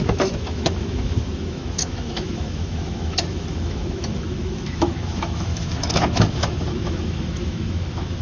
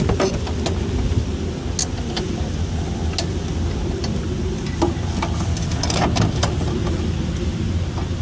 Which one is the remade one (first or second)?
first